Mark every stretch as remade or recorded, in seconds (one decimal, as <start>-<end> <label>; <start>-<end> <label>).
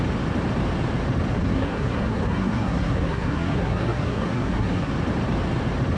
0.0-1.3 recorded; 1.3-4.9 remade; 4.9-6.0 recorded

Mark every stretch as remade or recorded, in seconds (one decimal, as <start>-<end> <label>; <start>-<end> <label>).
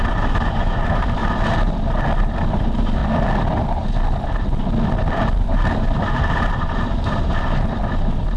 0.0-1.2 remade; 1.2-2.2 recorded; 2.2-3.0 remade; 3.0-5.2 recorded; 5.2-8.4 remade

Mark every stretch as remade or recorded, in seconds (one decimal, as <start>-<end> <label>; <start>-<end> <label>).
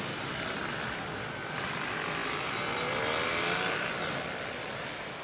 0.0-2.2 recorded; 2.2-5.2 remade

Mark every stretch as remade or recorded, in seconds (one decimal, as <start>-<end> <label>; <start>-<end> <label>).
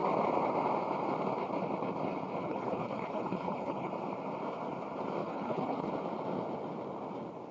0.0-2.4 recorded; 2.4-3.9 remade; 3.9-5.2 recorded; 5.2-5.9 remade; 5.9-7.5 recorded